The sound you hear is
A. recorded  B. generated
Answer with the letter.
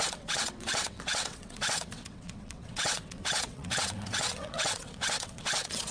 B